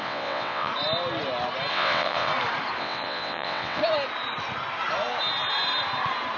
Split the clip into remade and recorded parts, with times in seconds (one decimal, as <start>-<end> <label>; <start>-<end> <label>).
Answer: 0.0-0.7 remade; 0.7-1.7 recorded; 1.7-2.3 remade; 2.3-2.8 recorded; 2.8-3.8 remade; 3.8-6.4 recorded

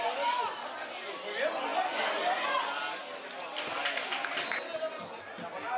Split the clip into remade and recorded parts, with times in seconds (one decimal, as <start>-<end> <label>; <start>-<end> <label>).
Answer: 0.0-5.8 recorded

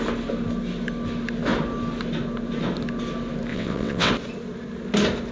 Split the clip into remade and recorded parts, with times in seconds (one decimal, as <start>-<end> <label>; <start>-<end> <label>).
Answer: 0.0-3.5 recorded; 3.5-4.1 remade; 4.1-5.3 recorded

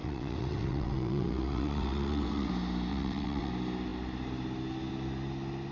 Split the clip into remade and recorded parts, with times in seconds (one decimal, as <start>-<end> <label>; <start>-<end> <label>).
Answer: 0.0-2.5 remade; 2.5-2.9 recorded; 2.9-3.5 remade; 3.5-5.7 recorded

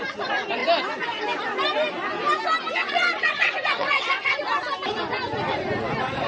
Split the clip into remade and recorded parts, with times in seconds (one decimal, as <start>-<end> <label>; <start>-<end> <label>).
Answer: 0.0-2.8 recorded; 2.8-4.4 remade; 4.4-6.3 recorded

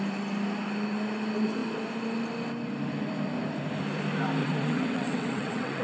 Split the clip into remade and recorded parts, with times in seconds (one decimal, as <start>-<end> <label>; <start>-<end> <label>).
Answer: 0.0-4.4 recorded; 4.4-5.8 remade